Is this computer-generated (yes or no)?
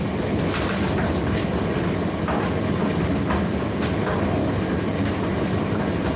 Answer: no